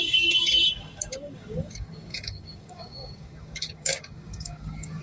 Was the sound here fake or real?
fake